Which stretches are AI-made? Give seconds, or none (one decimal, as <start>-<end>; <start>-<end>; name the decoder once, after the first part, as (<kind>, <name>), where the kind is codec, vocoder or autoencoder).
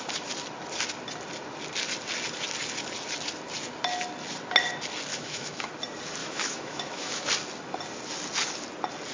5.1-5.7 (autoencoder, DAC-VAE); 6.2-7.3